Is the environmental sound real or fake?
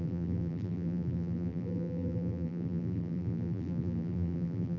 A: fake